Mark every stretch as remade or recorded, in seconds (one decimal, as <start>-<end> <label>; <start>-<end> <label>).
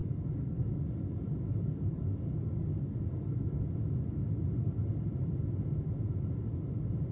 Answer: 0.0-3.6 remade; 3.6-7.1 recorded